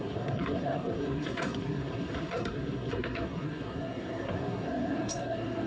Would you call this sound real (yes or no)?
no